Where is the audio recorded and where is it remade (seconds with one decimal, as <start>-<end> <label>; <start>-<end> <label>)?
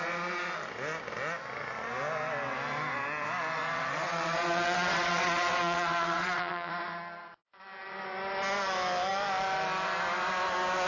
0.0-3.5 recorded; 3.5-6.7 remade; 6.7-10.9 recorded